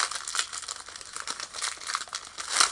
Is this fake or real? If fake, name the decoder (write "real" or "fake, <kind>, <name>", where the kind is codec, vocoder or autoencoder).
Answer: real